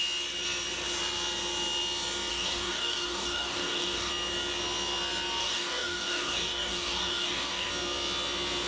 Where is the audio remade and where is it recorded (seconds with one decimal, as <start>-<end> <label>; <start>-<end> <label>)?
0.0-2.3 recorded; 2.3-4.1 remade; 4.1-5.4 recorded; 5.4-7.7 remade; 7.7-8.7 recorded